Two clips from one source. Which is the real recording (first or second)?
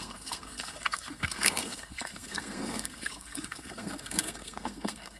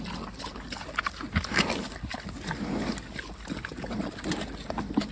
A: second